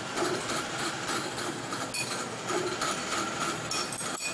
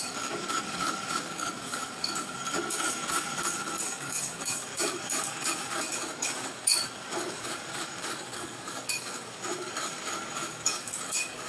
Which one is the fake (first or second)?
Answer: second